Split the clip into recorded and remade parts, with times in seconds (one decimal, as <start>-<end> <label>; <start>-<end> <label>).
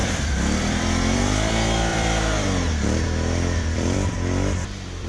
0.0-1.5 remade; 1.5-1.9 recorded; 1.9-5.1 remade